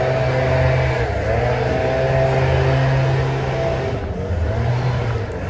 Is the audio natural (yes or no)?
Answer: yes